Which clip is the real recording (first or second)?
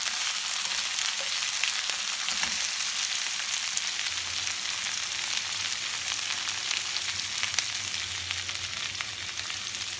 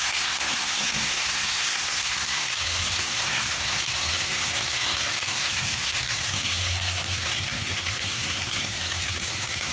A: first